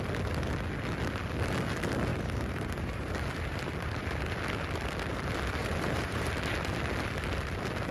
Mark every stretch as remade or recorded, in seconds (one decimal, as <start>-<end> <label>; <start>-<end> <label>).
0.0-2.1 recorded; 2.1-3.1 remade; 3.1-5.6 recorded; 5.6-6.3 remade; 6.3-7.9 recorded